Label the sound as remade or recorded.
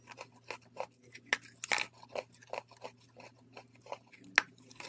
recorded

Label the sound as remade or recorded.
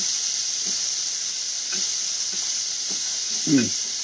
recorded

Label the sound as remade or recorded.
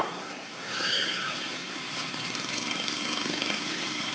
remade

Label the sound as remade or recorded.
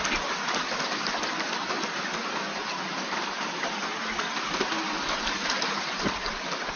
recorded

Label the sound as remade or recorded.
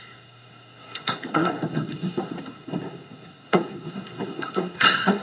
remade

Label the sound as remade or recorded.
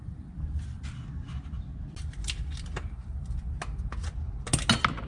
recorded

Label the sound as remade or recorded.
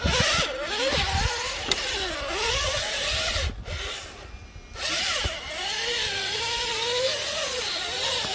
recorded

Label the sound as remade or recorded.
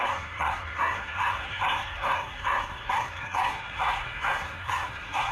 remade